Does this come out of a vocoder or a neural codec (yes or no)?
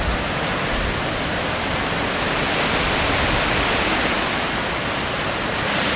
no